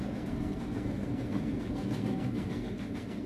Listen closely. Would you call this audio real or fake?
fake